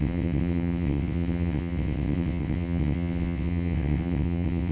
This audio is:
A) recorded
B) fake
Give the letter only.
B